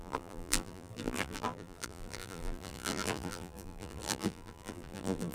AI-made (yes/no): yes